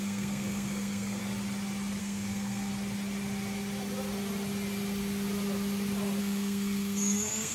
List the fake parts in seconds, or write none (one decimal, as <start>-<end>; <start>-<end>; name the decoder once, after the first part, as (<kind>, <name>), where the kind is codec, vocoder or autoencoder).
0.0-1.2 (codec, SNAC); 2.0-2.7; 6.2-7.5